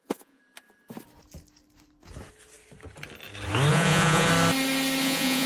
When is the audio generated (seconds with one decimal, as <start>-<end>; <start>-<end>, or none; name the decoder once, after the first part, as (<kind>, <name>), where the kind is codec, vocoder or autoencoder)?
0.0-0.4 (vocoder, Vocos); 3.7-4.3; 5.0-5.5